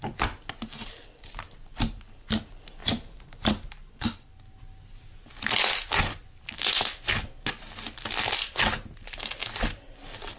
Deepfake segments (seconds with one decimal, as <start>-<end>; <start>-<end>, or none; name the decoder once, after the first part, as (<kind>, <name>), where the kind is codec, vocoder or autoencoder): 2.8-4.3 (vocoder, BigVGAN v2)